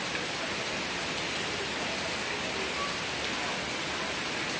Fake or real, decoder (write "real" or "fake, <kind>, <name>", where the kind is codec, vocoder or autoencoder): real